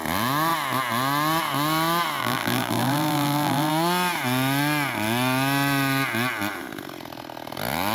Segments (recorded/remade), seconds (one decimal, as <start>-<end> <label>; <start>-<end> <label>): 0.0-2.2 recorded; 2.2-3.7 remade; 3.7-7.9 recorded